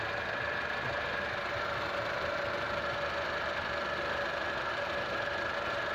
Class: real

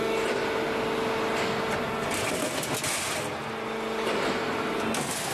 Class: real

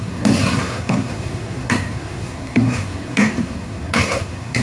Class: fake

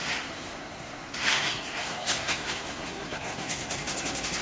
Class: fake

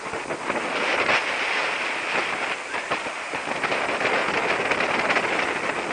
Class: real